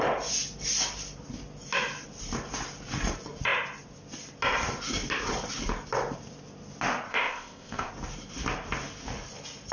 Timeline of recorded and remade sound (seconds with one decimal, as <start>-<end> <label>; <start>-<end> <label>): 0.0-7.1 recorded; 7.1-7.9 remade; 7.9-9.7 recorded